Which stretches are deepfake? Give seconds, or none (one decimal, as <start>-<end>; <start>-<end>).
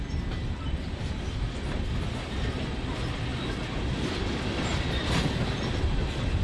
none